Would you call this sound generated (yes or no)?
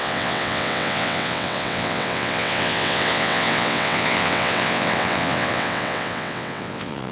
yes